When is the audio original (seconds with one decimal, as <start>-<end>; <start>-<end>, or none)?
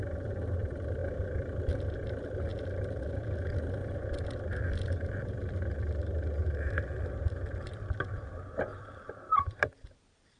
0.0-8.7; 10.0-10.4